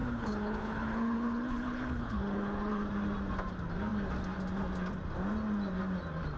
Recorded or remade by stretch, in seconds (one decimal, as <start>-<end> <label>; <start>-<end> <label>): 0.0-2.8 remade; 2.8-6.4 recorded

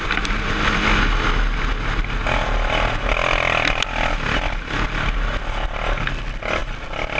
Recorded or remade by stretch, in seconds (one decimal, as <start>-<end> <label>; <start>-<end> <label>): 0.0-7.2 recorded

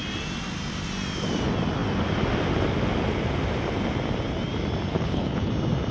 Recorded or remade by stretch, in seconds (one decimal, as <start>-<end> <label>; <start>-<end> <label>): 0.0-4.9 recorded; 4.9-5.5 remade; 5.5-5.9 recorded

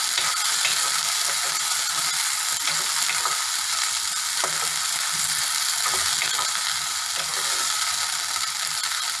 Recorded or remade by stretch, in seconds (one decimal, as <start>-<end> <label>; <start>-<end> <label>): 0.0-9.2 recorded

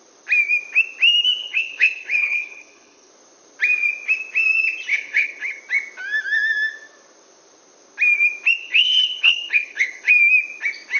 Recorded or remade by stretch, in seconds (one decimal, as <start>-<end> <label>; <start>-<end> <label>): 0.0-1.4 recorded; 1.4-3.1 remade; 3.1-4.9 recorded; 4.9-5.6 remade; 5.6-8.6 recorded; 8.6-10.1 remade; 10.1-11.0 recorded

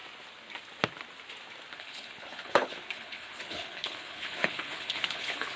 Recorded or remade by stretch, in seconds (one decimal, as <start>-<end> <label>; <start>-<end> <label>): 0.0-1.7 recorded; 1.7-5.6 remade